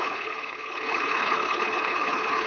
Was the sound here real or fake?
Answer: fake